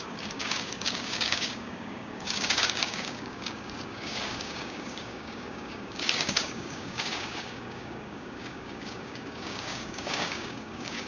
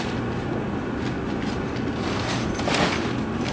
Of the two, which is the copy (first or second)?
first